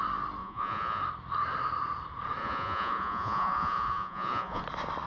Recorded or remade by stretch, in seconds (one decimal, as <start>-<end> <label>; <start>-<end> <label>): 0.0-0.4 recorded; 0.4-1.0 remade; 1.0-2.4 recorded; 2.4-4.6 remade; 4.6-5.1 recorded